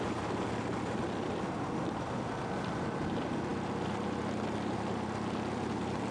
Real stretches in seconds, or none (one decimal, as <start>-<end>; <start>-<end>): 0.0-6.1